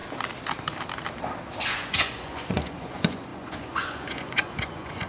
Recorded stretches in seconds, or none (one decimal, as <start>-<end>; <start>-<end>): 0.0-1.7